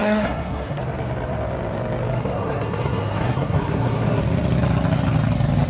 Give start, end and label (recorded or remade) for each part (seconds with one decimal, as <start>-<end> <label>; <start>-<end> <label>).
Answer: 0.0-0.8 remade; 0.8-2.1 recorded; 2.1-4.2 remade; 4.2-5.7 recorded